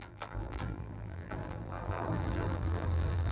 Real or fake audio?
fake